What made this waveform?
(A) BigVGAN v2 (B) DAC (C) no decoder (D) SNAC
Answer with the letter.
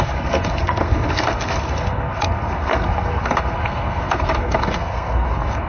D